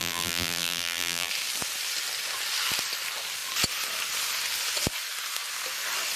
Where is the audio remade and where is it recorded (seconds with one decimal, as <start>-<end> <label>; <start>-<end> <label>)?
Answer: 0.0-1.3 remade; 1.3-6.2 recorded